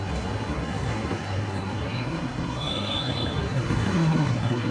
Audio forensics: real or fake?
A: fake